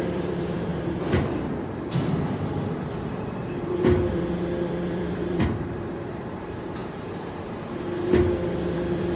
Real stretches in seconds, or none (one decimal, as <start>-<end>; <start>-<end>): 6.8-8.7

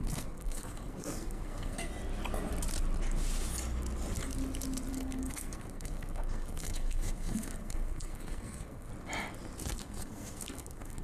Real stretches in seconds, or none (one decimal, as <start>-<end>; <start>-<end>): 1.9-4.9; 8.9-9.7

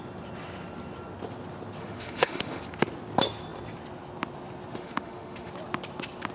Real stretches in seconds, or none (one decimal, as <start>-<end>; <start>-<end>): 0.0-1.8; 2.6-4.7; 5.5-6.3